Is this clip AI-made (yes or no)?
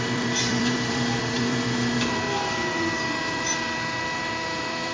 yes